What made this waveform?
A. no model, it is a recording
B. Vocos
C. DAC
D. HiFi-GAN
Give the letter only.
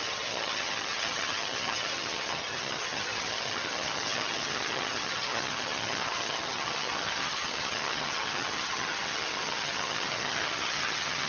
D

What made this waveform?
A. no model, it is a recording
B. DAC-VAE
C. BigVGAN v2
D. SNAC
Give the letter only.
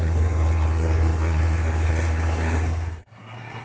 D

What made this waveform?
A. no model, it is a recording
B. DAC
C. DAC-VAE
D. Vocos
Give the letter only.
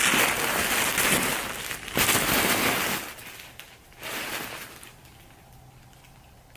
A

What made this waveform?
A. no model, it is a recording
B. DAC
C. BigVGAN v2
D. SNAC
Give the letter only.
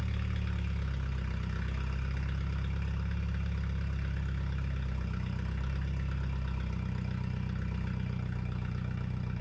A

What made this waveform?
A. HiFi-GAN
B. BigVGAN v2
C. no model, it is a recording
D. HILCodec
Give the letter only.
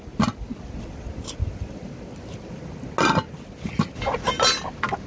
C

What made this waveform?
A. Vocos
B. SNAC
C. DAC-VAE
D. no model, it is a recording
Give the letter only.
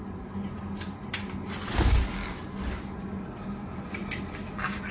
D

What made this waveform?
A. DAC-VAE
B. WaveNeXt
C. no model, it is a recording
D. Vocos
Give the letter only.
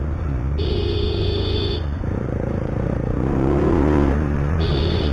D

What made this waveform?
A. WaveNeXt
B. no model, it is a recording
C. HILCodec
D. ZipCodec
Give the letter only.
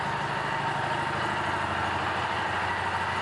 B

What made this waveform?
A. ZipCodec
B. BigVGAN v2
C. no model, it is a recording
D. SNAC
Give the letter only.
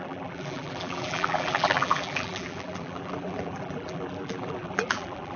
B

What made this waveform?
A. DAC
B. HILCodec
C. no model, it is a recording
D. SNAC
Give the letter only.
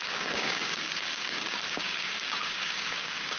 A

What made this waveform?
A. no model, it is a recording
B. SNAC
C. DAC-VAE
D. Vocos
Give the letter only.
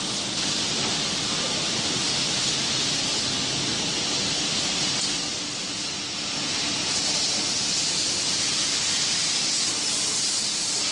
A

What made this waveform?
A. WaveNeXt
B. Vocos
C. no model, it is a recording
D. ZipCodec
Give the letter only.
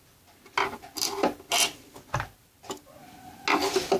C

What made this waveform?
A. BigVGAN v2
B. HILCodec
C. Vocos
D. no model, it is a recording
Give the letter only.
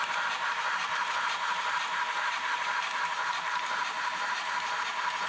A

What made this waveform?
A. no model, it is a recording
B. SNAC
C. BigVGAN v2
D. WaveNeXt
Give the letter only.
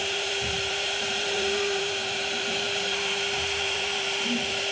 C